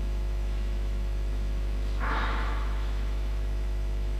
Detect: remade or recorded remade